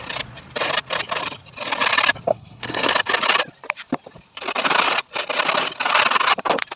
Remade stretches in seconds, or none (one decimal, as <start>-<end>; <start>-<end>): 2.3-2.9